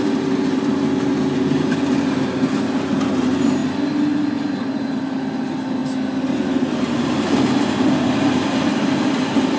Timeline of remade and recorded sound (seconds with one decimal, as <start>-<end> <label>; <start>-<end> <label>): 0.0-9.6 recorded